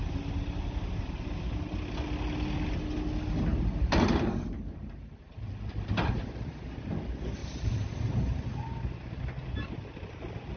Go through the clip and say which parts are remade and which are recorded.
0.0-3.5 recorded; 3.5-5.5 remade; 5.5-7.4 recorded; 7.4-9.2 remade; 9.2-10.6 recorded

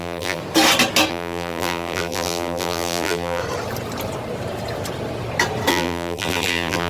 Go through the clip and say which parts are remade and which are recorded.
0.0-0.4 remade; 0.4-1.1 recorded; 1.1-3.4 remade; 3.4-5.7 recorded; 5.7-6.9 remade